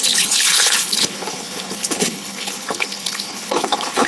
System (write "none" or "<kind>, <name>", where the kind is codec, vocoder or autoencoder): codec, HILCodec